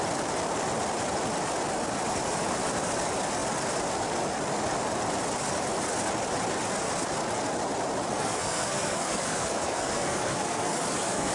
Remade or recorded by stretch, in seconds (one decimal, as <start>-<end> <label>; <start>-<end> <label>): 0.0-8.1 recorded; 8.1-11.3 remade